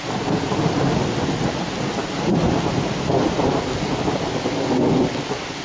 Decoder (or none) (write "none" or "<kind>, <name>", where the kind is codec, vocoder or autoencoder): none